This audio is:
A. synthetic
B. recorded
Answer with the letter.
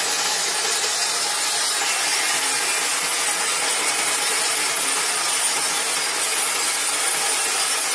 B